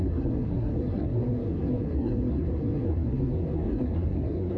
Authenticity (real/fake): fake